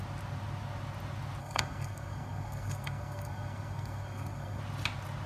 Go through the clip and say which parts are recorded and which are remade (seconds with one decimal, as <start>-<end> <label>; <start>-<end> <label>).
0.0-1.4 recorded; 1.4-4.6 remade; 4.6-5.3 recorded